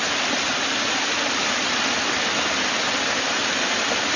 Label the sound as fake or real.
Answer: real